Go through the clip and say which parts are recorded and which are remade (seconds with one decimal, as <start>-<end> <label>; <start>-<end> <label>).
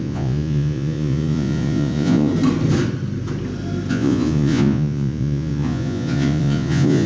0.0-2.3 remade; 2.3-3.9 recorded; 3.9-7.1 remade